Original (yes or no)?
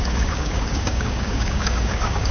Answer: no